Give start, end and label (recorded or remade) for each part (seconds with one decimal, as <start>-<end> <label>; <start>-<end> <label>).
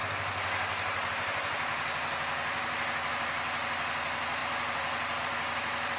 0.0-6.0 recorded